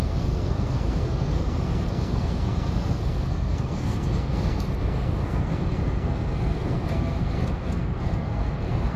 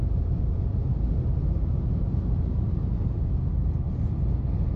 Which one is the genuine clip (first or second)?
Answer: second